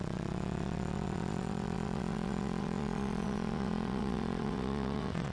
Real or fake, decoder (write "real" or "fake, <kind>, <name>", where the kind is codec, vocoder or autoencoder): fake, vocoder, WaveNeXt